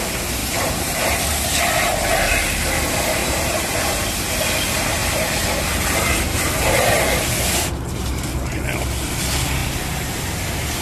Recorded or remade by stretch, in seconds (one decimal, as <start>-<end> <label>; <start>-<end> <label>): 0.0-0.4 recorded; 0.4-1.2 remade; 1.2-3.2 recorded; 3.2-4.1 remade; 4.1-9.6 recorded; 9.6-10.8 remade